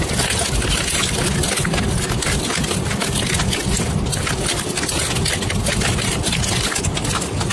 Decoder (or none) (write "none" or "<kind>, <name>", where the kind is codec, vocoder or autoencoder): none